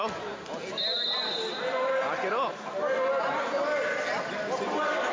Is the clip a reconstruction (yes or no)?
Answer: no